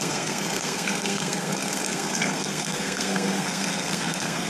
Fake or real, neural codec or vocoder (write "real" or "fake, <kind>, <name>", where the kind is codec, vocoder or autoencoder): fake, codec, SNAC